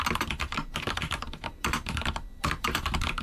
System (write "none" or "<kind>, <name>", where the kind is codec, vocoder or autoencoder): vocoder, BigVGAN v2